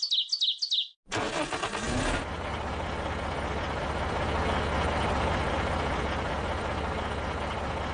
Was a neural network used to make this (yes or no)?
no